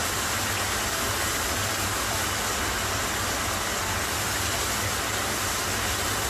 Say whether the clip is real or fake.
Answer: real